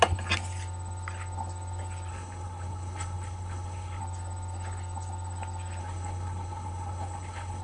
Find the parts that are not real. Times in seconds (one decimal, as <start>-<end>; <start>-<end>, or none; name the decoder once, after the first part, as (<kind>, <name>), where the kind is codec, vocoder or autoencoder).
2.1-4.0 (codec, HILCodec); 5.8-7.6